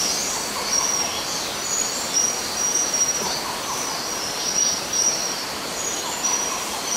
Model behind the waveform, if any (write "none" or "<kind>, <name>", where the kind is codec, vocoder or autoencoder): vocoder, BigVGAN v2